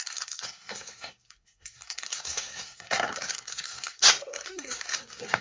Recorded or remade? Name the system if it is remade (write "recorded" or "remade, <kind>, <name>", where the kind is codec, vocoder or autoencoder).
remade, codec, SNAC